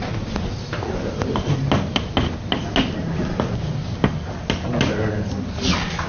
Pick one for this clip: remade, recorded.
recorded